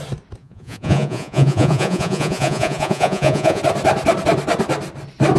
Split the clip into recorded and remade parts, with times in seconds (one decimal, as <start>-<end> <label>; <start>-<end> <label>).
0.0-0.4 recorded; 0.4-3.6 remade; 3.6-5.4 recorded